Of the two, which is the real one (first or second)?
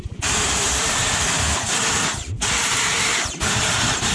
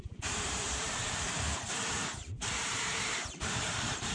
first